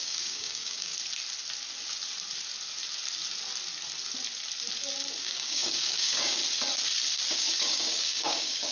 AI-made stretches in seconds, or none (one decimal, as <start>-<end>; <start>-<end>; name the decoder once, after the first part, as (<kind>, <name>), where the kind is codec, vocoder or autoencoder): 0.0-0.9 (codec, DAC); 5.2-6.4; 7.3-8.7